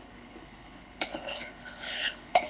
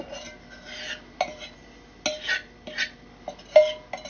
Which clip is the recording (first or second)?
second